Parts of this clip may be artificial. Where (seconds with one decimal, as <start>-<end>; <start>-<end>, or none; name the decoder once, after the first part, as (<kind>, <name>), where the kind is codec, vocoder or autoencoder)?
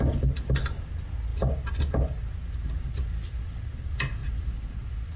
none